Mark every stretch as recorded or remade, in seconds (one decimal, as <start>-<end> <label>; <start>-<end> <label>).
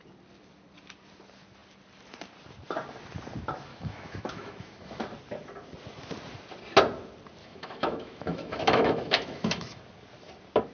0.0-3.7 recorded; 3.7-5.0 remade; 5.0-7.4 recorded; 7.4-9.8 remade; 9.8-10.7 recorded